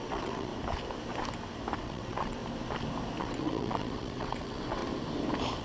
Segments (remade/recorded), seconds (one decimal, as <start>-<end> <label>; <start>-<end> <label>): 0.0-0.5 remade; 0.5-1.8 recorded; 1.8-2.4 remade; 2.4-3.2 recorded; 3.2-4.8 remade; 4.8-5.6 recorded